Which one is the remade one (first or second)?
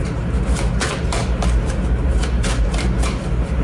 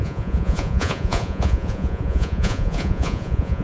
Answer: second